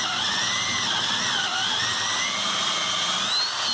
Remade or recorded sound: recorded